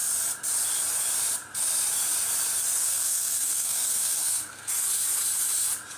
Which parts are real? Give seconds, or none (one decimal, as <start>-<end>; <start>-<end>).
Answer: 0.0-2.8; 4.7-6.0